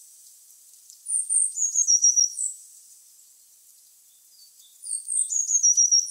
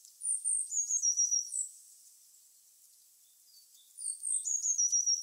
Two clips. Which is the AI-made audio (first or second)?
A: first